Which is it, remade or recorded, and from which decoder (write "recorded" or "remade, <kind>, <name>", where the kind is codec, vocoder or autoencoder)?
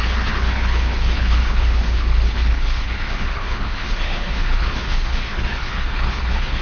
remade, codec, HILCodec